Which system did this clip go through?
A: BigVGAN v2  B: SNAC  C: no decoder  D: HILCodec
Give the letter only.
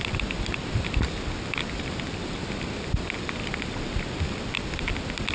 C